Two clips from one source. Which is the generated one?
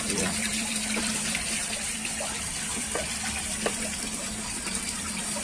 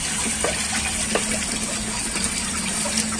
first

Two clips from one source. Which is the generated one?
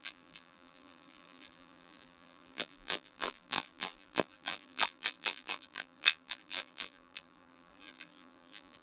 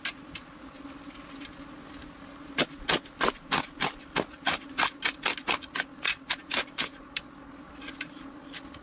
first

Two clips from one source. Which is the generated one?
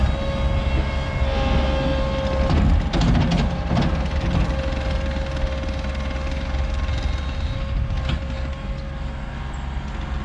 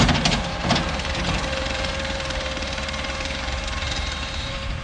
second